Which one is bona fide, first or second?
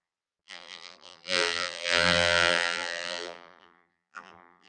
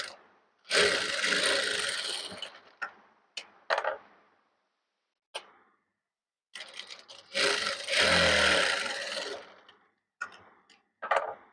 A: second